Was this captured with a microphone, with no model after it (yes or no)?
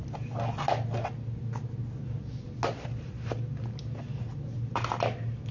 yes